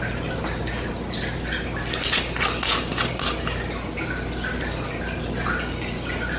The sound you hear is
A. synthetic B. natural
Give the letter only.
B